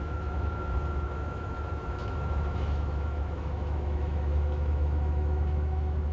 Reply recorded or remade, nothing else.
remade